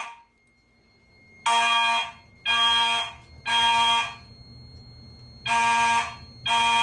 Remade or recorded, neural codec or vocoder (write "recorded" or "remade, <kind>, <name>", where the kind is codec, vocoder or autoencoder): recorded